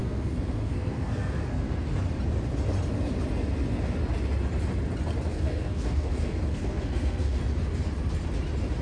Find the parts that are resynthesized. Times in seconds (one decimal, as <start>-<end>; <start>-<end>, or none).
0.0-1.8; 5.3-7.4